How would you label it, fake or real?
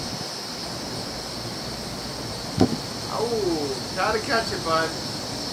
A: real